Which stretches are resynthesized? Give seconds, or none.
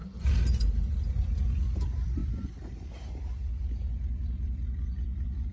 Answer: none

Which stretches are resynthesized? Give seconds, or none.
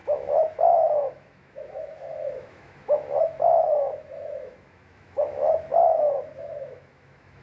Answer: 0.0-7.4 (autoencoder, DAC-VAE)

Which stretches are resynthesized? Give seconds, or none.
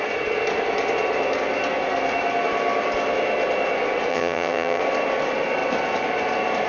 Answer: 4.1-4.8 (vocoder, HiFi-GAN)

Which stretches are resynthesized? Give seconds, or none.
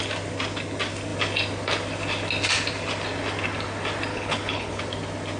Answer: 4.1-4.8 (codec, HILCodec)